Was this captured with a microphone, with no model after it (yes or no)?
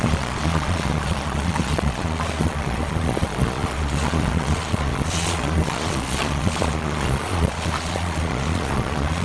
no